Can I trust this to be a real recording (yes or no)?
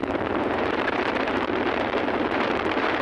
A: no